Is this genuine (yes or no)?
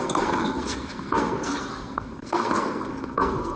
no